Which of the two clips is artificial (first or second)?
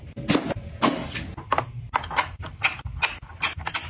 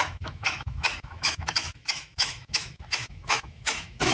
second